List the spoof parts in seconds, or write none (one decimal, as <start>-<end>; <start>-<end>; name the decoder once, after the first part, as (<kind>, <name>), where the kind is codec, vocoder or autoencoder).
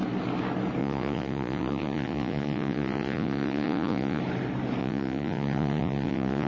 0.8-4.2 (vocoder, Vocos); 4.8-6.5